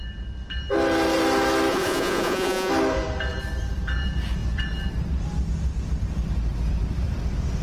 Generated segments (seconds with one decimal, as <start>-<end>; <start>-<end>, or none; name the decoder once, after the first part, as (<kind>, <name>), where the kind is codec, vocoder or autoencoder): 1.7-2.7 (vocoder, Vocos)